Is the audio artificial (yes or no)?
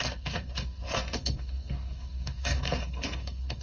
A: yes